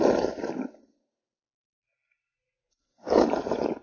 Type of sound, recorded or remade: recorded